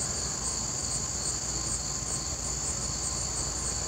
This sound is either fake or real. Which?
real